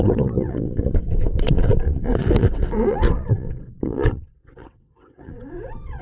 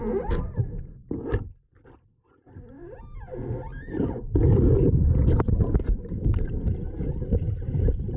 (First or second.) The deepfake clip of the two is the first